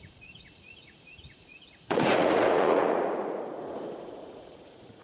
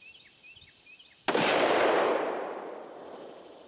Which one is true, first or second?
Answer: second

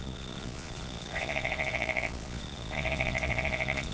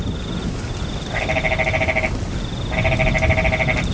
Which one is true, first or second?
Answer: second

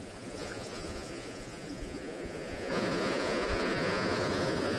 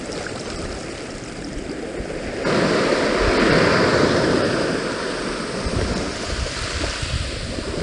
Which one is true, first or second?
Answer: second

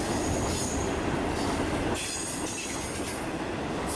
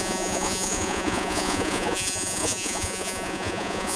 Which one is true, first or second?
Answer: first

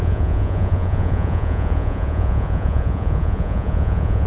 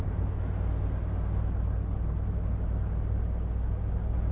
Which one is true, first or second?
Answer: second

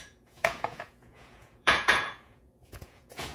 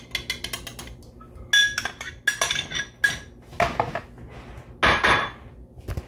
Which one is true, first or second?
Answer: second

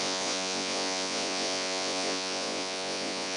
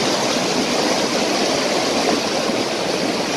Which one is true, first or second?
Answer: second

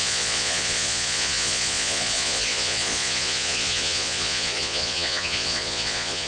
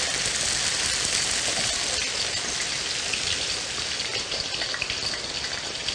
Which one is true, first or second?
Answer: second